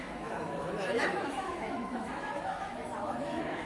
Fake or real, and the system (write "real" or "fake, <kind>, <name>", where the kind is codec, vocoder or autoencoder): fake, autoencoder, DAC-VAE